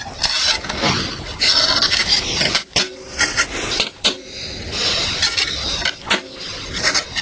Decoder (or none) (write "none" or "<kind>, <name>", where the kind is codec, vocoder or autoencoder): none